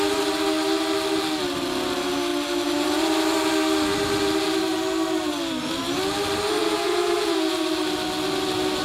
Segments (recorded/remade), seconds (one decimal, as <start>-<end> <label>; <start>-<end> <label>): 0.0-6.6 recorded; 6.6-7.6 remade; 7.6-8.8 recorded